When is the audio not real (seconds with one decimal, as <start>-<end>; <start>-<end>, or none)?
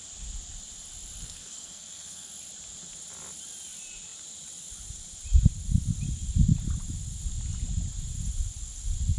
1.2-2.3